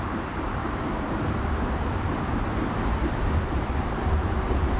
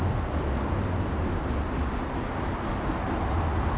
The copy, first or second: first